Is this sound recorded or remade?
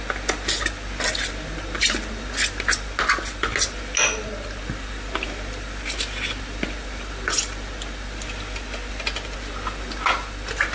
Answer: recorded